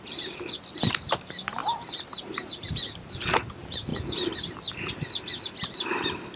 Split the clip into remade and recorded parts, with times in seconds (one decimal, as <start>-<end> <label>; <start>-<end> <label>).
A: 0.0-1.6 recorded; 1.6-3.2 remade; 3.2-6.4 recorded